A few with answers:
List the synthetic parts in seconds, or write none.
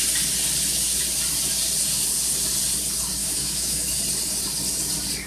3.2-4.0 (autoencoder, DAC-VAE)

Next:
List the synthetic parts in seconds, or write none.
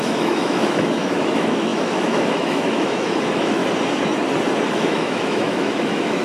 0.0-3.6 (autoencoder, DAC-VAE); 4.7-6.2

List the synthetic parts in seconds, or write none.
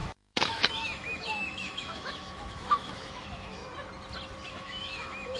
0.0-3.6 (autoencoder, DAC-VAE); 4.5-5.4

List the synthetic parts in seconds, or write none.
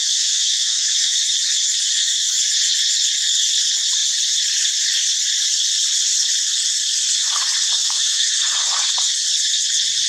0.0-1.2 (autoencoder, DAC-VAE); 2.0-2.5; 7.8-8.3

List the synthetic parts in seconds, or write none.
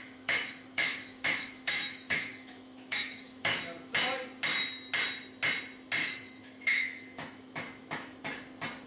0.0-3.6 (autoencoder, DAC-VAE); 6.0-8.2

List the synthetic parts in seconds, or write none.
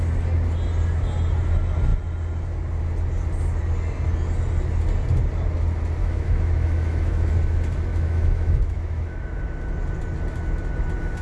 6.0-7.3 (autoencoder, DAC-VAE); 7.9-9.4